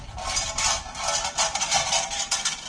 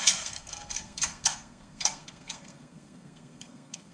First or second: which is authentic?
first